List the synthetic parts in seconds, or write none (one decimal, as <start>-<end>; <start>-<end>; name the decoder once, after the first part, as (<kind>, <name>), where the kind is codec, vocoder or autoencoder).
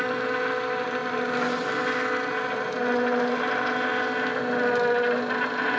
none